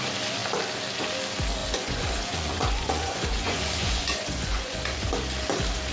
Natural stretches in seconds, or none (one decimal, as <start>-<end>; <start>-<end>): 0.0-1.6; 5.1-5.9